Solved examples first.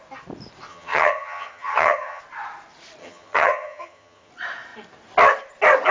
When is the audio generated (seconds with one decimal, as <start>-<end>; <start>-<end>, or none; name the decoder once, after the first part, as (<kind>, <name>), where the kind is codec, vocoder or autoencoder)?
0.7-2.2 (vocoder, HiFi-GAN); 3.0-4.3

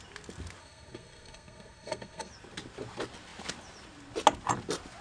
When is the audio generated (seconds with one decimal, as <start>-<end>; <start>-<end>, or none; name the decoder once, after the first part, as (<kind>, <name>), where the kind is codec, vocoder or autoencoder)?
0.6-2.3 (codec, SNAC)

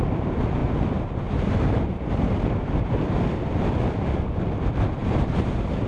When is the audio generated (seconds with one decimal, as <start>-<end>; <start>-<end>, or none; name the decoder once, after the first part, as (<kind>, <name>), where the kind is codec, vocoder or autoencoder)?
0.6-3.1 (vocoder, BigVGAN v2); 5.0-5.9

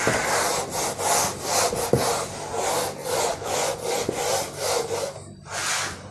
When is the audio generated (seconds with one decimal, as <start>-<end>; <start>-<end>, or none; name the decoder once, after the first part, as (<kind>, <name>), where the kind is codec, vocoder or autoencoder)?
3.0-4.2 (vocoder, Vocos)